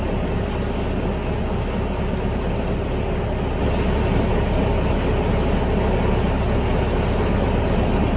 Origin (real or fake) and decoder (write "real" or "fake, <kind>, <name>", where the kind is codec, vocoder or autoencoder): real